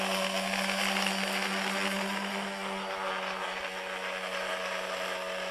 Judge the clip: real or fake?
real